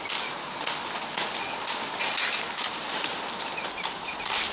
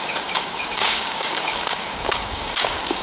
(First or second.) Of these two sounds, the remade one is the second